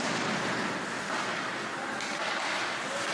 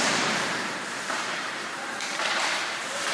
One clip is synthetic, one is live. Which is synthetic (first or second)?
second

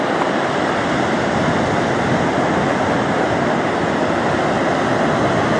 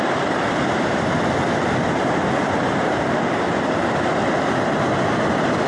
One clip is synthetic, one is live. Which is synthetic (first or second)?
second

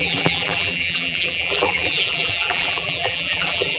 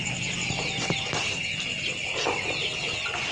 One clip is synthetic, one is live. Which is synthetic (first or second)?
first